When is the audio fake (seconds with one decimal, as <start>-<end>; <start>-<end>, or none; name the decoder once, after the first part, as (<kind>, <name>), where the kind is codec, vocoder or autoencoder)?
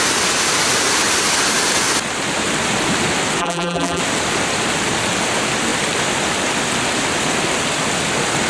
3.4-4.0 (vocoder, BigVGAN v2)